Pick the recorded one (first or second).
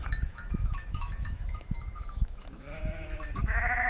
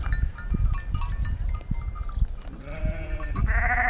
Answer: second